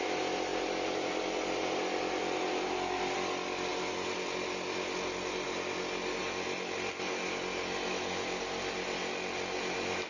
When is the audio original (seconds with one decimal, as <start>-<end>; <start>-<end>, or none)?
0.0-10.1